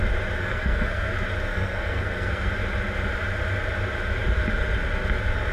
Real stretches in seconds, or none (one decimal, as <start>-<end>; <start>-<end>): 0.0-0.4; 1.1-1.5; 2.5-5.5